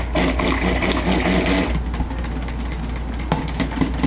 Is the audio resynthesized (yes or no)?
no